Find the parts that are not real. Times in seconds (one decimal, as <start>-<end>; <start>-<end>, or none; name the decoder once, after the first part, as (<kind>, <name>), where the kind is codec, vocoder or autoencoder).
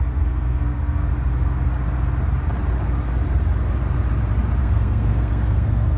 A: 0.0-1.1 (codec, SNAC); 4.6-6.0